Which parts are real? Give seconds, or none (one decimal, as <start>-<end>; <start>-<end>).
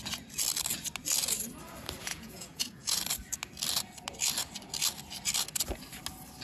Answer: 0.0-2.1; 3.0-6.4